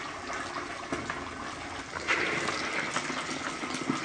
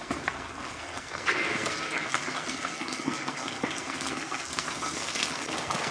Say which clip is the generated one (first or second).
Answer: second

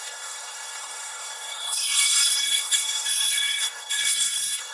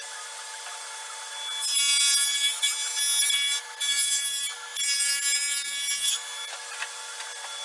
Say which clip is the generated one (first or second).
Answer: first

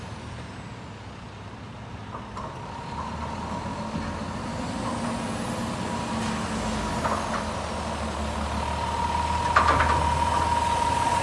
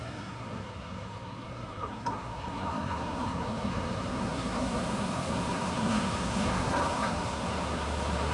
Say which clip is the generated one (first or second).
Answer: second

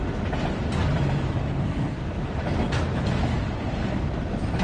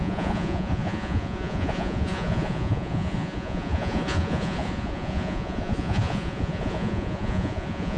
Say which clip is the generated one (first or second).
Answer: second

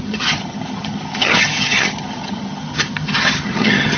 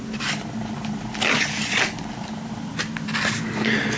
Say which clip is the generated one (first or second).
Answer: first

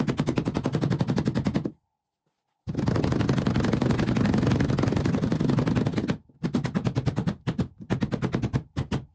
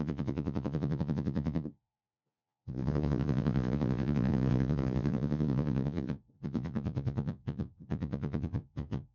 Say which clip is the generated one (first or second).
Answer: second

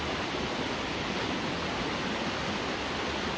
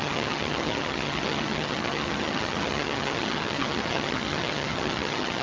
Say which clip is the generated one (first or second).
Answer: second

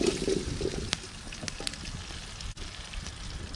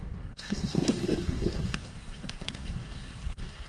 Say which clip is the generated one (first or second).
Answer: second